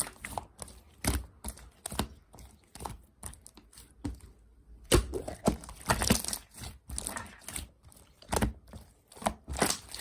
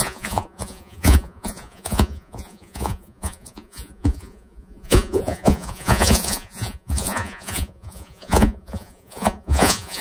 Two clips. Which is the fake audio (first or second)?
second